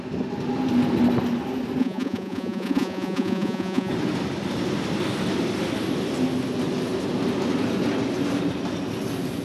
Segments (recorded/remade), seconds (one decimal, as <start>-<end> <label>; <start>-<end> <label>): 0.0-1.8 recorded; 1.8-3.9 remade; 3.9-9.4 recorded